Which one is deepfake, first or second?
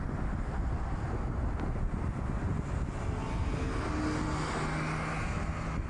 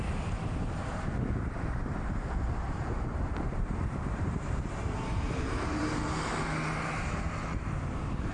second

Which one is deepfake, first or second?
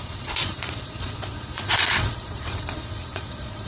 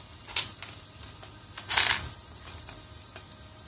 first